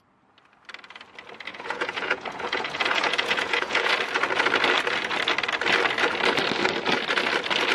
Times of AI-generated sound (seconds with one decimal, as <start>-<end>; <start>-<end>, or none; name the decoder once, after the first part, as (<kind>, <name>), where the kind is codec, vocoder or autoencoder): 1.5-3.9 (vocoder, Vocos)